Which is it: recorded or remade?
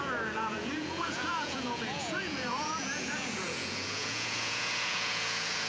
remade